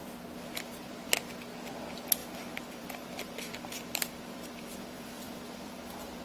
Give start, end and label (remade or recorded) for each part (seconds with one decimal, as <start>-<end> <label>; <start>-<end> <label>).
0.0-2.2 recorded; 2.2-6.2 remade